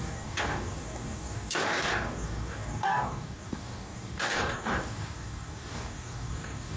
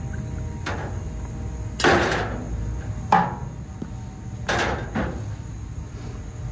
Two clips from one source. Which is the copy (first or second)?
first